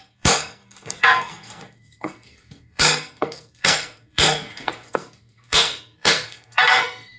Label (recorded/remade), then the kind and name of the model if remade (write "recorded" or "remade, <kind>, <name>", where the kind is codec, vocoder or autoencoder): remade, codec, SNAC